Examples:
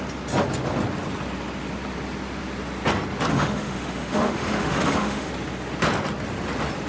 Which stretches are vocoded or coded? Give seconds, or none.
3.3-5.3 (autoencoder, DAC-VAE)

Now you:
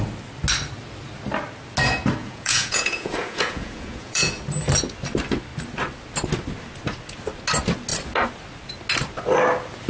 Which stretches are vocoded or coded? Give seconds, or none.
2.2-4.4 (vocoder, Vocos)

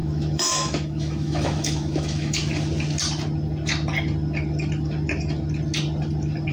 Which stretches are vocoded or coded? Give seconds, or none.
0.0-2.4 (autoencoder, DAC-VAE)

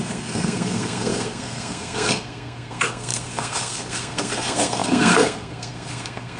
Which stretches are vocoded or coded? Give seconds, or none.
0.0-6.4 (codec, SNAC)

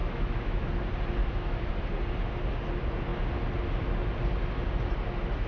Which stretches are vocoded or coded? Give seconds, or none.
0.0-0.7 (autoencoder, DAC-VAE); 1.2-1.7

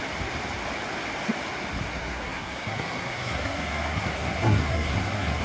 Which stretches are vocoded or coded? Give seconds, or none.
1.9-5.4 (codec, SNAC)